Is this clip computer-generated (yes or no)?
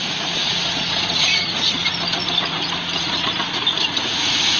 yes